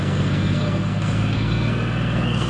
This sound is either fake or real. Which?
fake